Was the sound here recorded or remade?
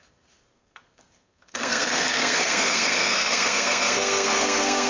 remade